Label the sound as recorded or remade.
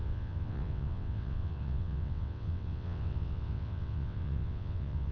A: remade